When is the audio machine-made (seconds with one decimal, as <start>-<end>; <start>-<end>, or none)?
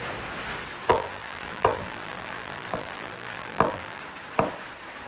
0.9-4.0